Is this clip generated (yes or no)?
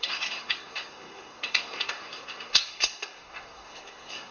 yes